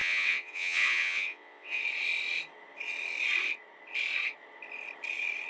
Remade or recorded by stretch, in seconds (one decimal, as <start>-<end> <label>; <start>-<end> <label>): 0.0-1.8 remade; 1.8-5.5 recorded